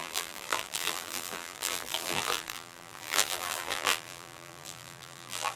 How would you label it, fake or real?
fake